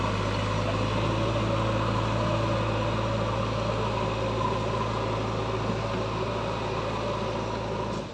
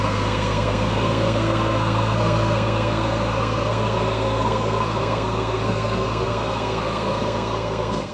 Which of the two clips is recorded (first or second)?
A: first